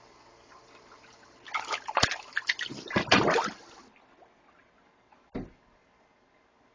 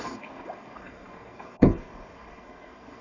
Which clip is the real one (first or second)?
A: first